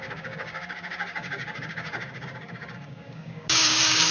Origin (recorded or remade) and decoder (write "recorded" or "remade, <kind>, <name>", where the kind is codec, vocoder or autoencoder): remade, codec, DAC